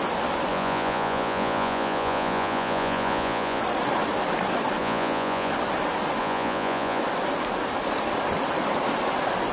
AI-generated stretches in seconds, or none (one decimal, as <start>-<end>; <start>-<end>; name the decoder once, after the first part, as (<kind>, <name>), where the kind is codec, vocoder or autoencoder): 0.5-3.6 (vocoder, Vocos); 4.8-5.5; 6.2-7.0